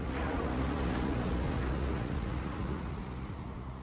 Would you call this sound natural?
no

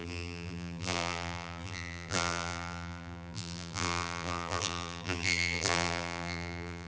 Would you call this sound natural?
no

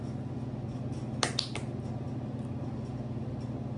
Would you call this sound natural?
yes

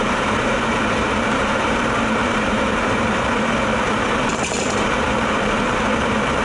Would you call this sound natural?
no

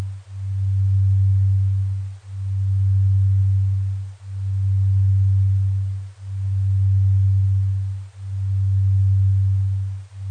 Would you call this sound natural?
yes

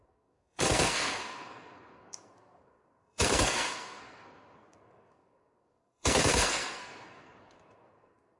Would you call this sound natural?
no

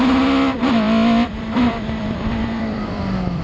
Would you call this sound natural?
no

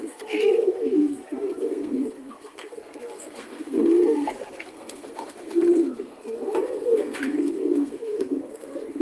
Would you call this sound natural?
no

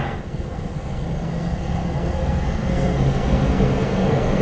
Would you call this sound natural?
no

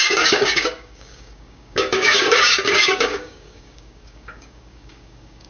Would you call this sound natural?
no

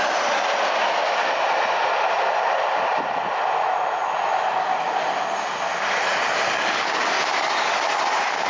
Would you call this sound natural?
yes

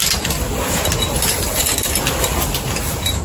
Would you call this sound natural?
yes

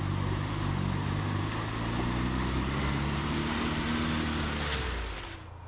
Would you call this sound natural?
yes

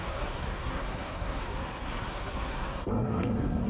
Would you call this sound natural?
no